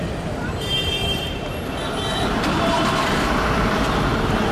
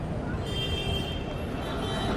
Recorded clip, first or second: second